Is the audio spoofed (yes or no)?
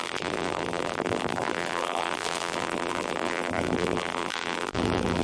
yes